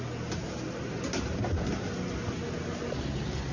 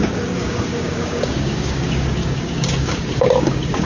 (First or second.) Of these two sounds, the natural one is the first